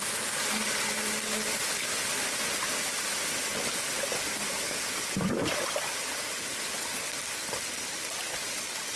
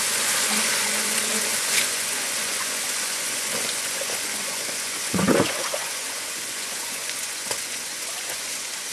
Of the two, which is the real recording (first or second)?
first